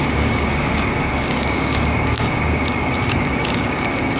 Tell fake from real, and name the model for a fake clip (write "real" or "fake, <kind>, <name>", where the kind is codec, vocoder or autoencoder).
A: fake, codec, DAC